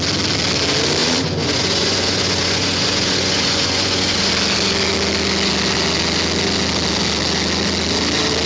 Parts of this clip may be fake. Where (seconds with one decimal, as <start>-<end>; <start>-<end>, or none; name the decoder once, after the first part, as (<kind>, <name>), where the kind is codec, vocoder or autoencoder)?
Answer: 1.0-4.3 (vocoder, Vocos)